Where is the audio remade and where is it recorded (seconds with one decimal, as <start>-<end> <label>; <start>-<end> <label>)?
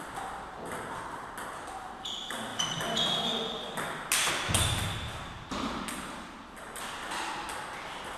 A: 0.0-8.2 recorded